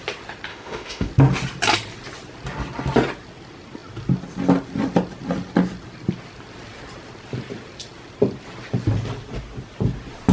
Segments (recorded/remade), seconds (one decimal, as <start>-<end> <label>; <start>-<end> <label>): 0.0-0.5 recorded; 0.5-1.1 remade; 1.1-10.3 recorded